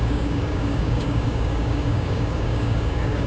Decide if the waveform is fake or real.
fake